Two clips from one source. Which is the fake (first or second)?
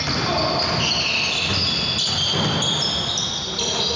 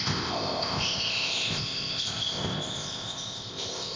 second